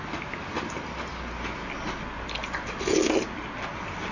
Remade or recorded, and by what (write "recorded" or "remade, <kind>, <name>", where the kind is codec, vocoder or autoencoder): recorded